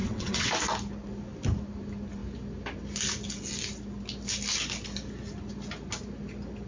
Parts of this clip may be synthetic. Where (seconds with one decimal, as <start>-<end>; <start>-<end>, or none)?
0.0-0.5